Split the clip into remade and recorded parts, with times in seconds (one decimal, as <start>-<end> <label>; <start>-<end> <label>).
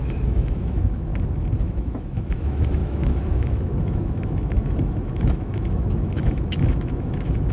0.0-1.1 remade; 1.1-1.6 recorded; 1.6-7.5 remade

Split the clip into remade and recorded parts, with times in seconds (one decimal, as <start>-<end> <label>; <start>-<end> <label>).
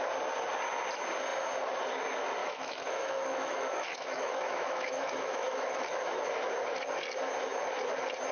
0.0-2.4 recorded; 2.4-6.3 remade; 6.3-8.3 recorded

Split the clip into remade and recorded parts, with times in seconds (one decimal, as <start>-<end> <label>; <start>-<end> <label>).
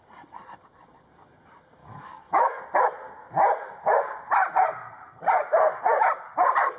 0.0-1.8 recorded; 1.8-2.6 remade; 2.6-6.8 recorded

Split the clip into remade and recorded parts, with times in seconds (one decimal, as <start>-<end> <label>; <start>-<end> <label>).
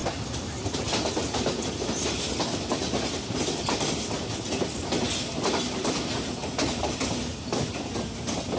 0.0-8.6 recorded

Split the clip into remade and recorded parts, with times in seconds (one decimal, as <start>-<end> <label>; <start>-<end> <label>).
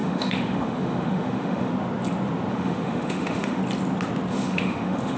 0.0-1.7 remade; 1.7-2.5 recorded; 2.5-3.6 remade; 3.6-4.3 recorded; 4.3-5.2 remade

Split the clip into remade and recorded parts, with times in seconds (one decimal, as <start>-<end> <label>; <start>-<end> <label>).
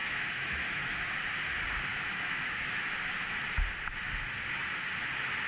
0.0-1.1 remade; 1.1-1.9 recorded; 1.9-2.8 remade; 2.8-5.5 recorded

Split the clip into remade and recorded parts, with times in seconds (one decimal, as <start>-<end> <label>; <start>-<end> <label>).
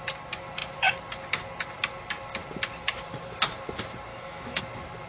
0.0-4.1 recorded; 4.1-4.6 remade; 4.6-5.1 recorded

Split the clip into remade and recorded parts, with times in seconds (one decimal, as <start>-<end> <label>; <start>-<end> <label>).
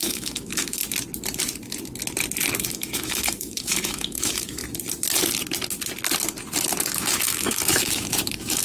0.0-0.8 remade; 0.8-2.6 recorded; 2.6-4.6 remade; 4.6-6.8 recorded; 6.8-8.6 remade